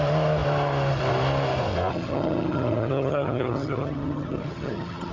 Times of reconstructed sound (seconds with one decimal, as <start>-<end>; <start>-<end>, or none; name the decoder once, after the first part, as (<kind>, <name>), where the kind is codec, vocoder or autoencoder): 1.9-5.1 (vocoder, HiFi-GAN)